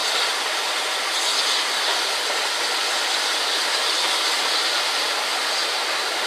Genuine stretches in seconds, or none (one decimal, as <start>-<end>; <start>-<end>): 0.0-5.3